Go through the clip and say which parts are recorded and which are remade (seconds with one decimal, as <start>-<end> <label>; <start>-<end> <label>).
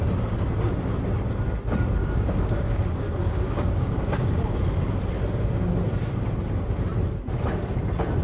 0.0-2.0 recorded; 2.0-4.6 remade; 4.6-8.2 recorded